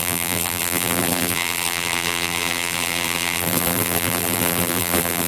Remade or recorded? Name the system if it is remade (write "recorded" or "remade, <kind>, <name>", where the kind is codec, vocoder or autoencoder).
remade, vocoder, BigVGAN v2